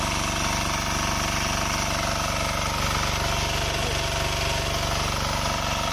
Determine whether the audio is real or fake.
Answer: real